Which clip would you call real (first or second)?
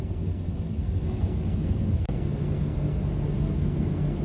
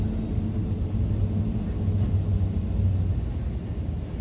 second